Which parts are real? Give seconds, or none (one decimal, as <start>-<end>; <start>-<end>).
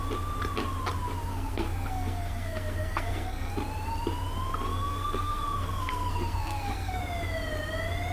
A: 0.0-1.3; 3.5-4.7; 7.0-8.1